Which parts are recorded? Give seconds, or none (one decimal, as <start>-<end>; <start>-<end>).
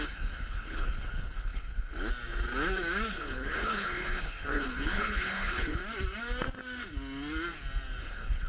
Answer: 1.9-3.1; 5.8-8.0